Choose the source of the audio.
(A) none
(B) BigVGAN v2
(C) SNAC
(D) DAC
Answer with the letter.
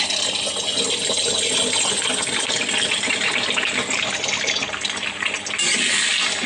A